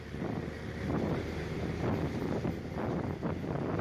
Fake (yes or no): no